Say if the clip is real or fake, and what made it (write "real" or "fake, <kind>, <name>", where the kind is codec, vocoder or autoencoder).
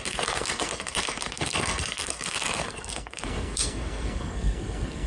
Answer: fake, codec, SNAC